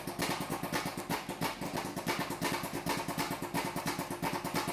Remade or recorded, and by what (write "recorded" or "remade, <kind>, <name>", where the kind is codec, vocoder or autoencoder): recorded